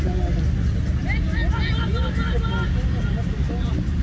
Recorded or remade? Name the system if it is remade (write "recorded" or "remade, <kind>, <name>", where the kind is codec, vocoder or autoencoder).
recorded